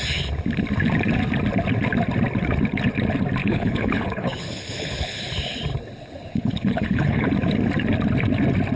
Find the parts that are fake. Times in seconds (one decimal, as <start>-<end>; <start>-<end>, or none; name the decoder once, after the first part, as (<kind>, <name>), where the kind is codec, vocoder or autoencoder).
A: 3.4-5.2 (codec, HILCodec); 6.3-7.3